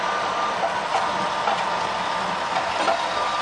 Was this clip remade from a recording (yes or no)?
no